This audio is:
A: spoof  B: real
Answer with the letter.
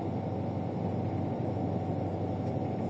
B